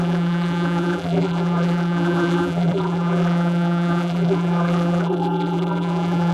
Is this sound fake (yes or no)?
yes